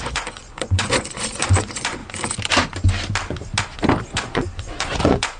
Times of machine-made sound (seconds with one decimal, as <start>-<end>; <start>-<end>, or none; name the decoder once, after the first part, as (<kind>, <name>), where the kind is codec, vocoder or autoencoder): 0.0-2.0 (vocoder, Vocos); 4.0-5.4